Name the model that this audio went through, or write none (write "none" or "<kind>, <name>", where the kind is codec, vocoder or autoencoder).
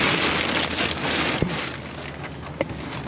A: none